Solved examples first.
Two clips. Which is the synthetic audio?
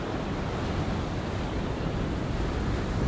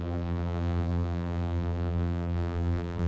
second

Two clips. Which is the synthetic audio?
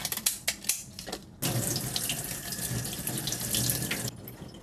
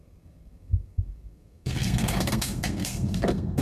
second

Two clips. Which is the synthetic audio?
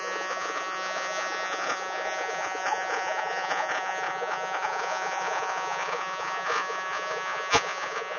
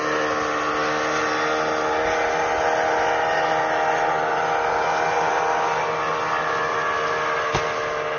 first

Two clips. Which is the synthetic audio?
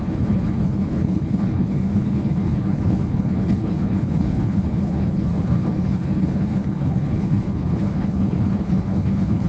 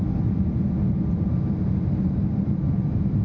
first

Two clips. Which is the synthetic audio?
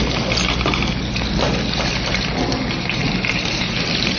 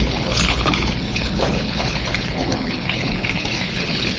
second